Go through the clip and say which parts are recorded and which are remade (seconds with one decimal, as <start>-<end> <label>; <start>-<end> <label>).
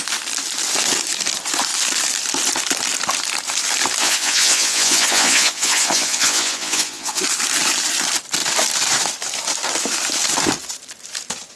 0.0-4.0 recorded; 4.0-7.2 remade; 7.2-11.6 recorded